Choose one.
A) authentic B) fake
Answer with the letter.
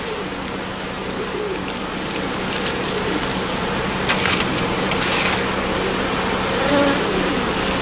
A